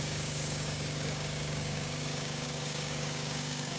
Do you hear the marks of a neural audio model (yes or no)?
yes